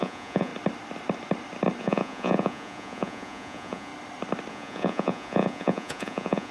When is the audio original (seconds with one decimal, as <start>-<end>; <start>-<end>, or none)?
0.5-1.8; 3.9-4.5